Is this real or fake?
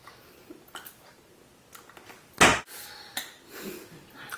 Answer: real